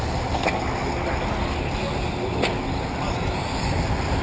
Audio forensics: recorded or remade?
recorded